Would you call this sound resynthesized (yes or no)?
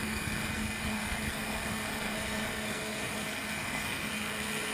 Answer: yes